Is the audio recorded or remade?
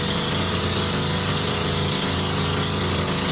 recorded